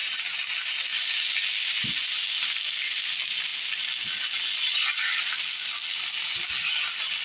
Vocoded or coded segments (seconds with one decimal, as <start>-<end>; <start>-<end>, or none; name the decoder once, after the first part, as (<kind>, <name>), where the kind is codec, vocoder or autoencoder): none